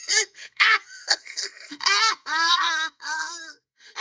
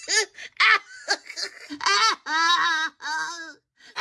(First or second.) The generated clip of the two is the first